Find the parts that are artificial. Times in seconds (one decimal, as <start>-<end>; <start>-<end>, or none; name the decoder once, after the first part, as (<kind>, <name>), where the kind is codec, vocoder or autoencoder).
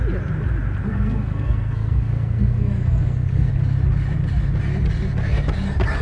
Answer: 0.8-3.5 (codec, SNAC)